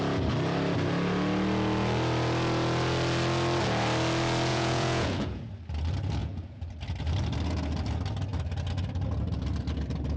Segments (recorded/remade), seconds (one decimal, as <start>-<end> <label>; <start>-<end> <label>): 0.0-4.5 recorded; 4.5-5.4 remade; 5.4-6.2 recorded; 6.2-6.7 remade; 6.7-10.2 recorded